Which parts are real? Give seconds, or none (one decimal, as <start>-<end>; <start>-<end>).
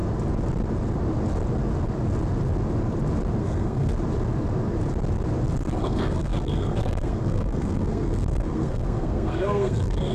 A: 0.0-3.4; 3.9-5.8